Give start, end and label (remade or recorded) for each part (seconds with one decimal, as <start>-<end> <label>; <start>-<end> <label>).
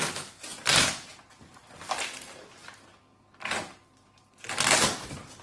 0.0-5.4 recorded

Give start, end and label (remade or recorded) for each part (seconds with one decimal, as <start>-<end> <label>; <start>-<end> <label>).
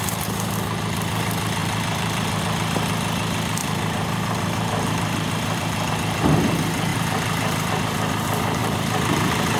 0.0-1.6 recorded; 1.6-2.4 remade; 2.4-3.6 recorded; 3.6-5.9 remade; 5.9-6.9 recorded; 6.9-7.7 remade; 7.7-8.6 recorded; 8.6-9.6 remade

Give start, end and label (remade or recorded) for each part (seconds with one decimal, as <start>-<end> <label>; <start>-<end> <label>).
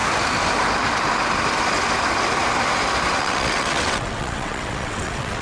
0.0-3.2 recorded; 3.2-5.4 remade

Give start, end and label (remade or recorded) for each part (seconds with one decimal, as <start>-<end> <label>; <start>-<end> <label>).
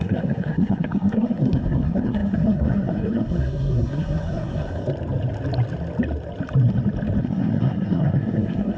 0.0-4.8 remade; 4.8-7.2 recorded; 7.2-8.8 remade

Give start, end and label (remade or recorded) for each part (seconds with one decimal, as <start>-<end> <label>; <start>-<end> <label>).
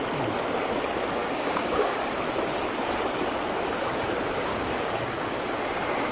0.0-1.2 recorded; 1.2-1.9 remade; 1.9-4.5 recorded; 4.5-5.4 remade; 5.4-6.1 recorded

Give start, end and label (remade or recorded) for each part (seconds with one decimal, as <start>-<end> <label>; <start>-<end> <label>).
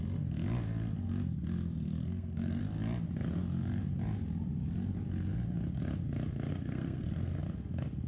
0.0-2.0 recorded; 2.0-2.6 remade; 2.6-6.5 recorded; 6.5-7.4 remade; 7.4-8.1 recorded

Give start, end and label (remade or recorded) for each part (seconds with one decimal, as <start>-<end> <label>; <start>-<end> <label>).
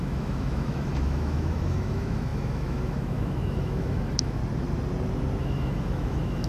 0.0-4.4 remade; 4.4-5.4 recorded; 5.4-6.5 remade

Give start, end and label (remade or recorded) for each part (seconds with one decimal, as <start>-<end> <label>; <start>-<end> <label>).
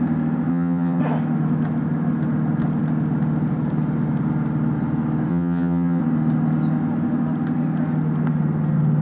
0.0-0.5 recorded; 0.5-1.0 remade; 1.0-5.3 recorded; 5.3-6.0 remade; 6.0-9.0 recorded